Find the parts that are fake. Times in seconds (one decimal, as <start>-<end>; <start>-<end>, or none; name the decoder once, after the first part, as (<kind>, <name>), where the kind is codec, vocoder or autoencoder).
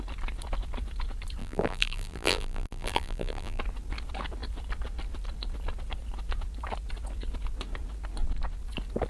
1.4-3.6 (vocoder, BigVGAN v2)